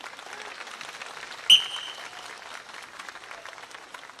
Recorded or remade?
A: recorded